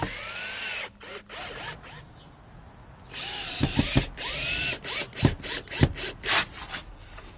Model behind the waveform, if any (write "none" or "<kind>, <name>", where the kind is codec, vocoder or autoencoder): vocoder, BigVGAN v2